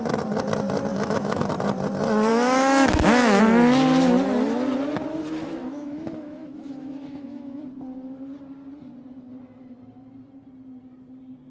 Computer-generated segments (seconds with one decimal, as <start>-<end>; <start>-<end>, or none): 0.9-1.5; 2.3-3.4; 5.6-7.6